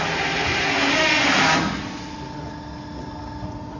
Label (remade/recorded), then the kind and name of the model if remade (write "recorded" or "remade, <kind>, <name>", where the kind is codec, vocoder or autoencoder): recorded